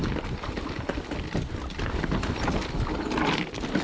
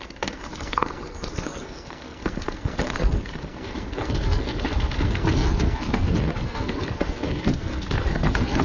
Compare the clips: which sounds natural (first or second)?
first